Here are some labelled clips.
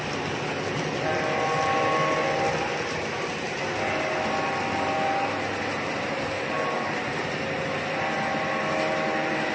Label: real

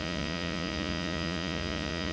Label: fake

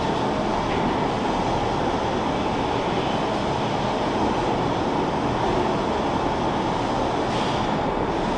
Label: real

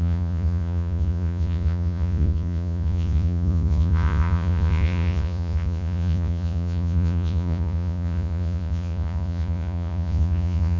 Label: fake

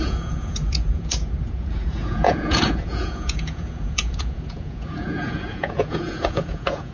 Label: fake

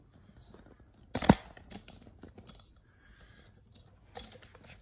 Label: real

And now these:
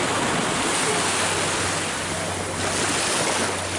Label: real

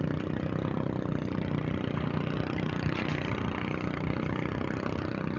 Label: real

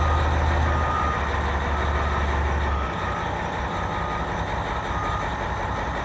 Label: real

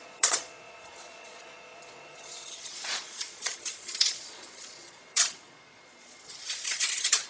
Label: fake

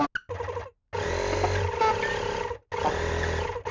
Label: real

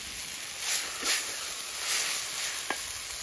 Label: real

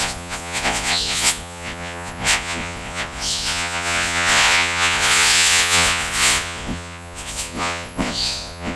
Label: fake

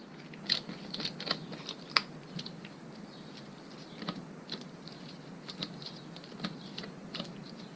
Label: real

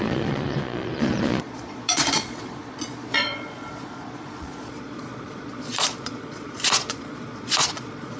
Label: fake